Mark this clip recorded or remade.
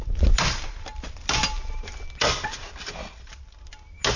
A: recorded